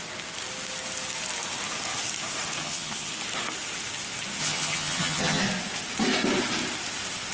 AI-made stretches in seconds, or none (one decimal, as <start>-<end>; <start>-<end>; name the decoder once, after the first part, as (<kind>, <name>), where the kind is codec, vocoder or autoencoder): 2.6-3.1 (vocoder, HiFi-GAN); 4.4-5.4